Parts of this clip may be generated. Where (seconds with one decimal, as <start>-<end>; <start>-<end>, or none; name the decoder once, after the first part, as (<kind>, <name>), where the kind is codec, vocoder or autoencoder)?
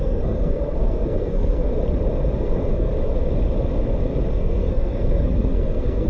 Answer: 0.0-1.7 (codec, SNAC); 2.4-2.9; 4.3-6.1